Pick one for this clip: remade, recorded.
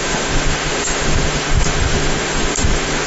remade